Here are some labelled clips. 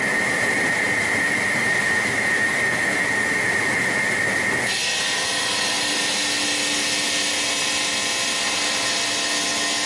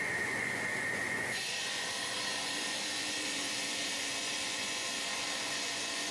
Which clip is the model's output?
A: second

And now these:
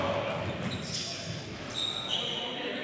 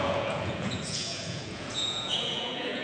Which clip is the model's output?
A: second